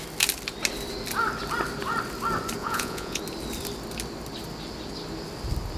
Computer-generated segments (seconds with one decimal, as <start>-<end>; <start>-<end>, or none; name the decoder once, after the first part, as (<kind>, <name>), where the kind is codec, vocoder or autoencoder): 2.6-3.2 (vocoder, Vocos)